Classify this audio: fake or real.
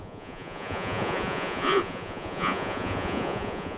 fake